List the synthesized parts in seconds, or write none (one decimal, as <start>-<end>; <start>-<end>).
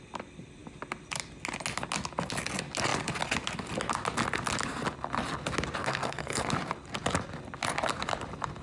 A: 5.8-6.5